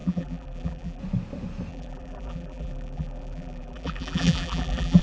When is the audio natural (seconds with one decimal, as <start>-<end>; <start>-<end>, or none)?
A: 1.0-1.7